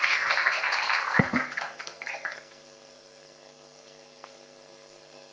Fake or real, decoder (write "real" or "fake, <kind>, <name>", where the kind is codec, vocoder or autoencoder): fake, codec, SNAC